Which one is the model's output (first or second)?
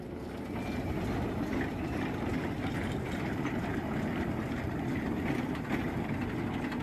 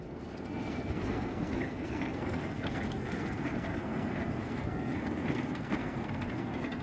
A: second